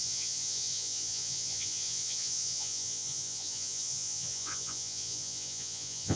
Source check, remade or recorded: remade